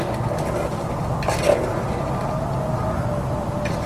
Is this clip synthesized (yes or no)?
no